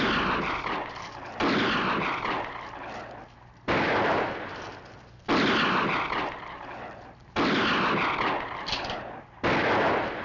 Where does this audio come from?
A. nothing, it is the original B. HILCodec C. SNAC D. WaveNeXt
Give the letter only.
A